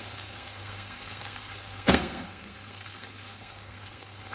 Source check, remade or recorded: remade